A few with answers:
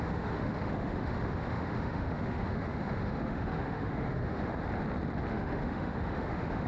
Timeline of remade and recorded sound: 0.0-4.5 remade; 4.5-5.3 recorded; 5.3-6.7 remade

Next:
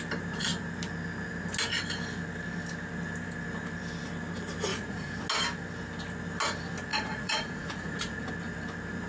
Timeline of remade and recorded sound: 0.0-4.7 recorded; 4.7-5.2 remade; 5.2-6.9 recorded; 6.9-8.3 remade; 8.3-9.1 recorded

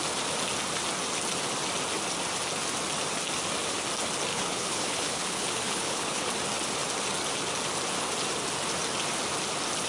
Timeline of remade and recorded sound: 0.0-4.3 recorded; 4.3-6.3 remade; 6.3-9.9 recorded

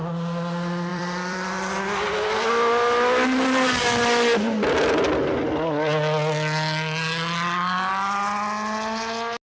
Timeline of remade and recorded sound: 0.0-0.9 recorded; 0.9-1.8 remade; 1.8-9.5 recorded

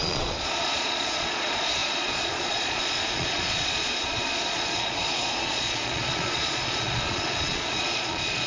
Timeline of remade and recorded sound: 0.0-8.5 remade

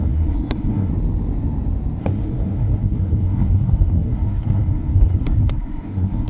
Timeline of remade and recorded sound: 0.0-0.9 remade; 0.9-2.0 recorded; 2.0-6.3 remade

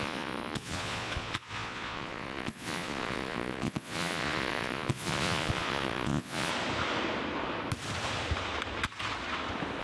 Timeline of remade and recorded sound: 0.0-6.5 remade; 6.5-9.8 recorded